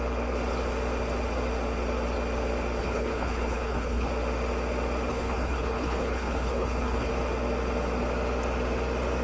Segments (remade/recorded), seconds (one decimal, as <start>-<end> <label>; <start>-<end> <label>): 0.0-2.8 recorded; 2.8-4.1 remade; 4.1-5.1 recorded; 5.1-7.1 remade; 7.1-9.2 recorded